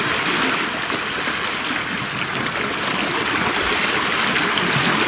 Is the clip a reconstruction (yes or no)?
no